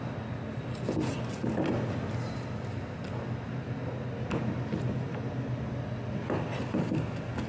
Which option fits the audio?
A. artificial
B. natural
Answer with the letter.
B